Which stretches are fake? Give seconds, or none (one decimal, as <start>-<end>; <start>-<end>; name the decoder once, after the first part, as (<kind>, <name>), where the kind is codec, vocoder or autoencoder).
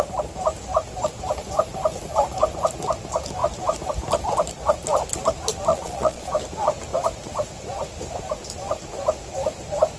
5.7-6.3 (vocoder, Vocos)